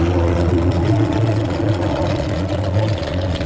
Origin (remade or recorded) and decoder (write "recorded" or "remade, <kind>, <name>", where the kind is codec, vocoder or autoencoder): remade, vocoder, Vocos